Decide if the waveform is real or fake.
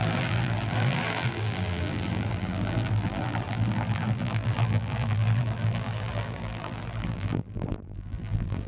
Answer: fake